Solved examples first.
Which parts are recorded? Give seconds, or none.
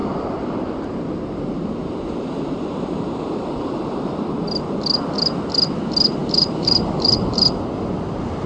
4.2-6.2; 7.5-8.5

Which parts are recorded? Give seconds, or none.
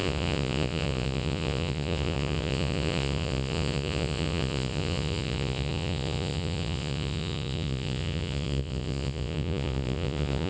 none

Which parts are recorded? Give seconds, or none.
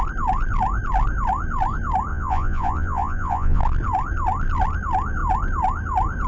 0.0-2.1; 3.6-6.3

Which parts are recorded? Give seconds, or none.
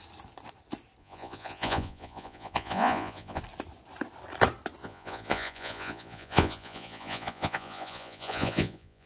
0.0-1.0; 3.4-4.8